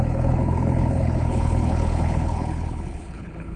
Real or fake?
fake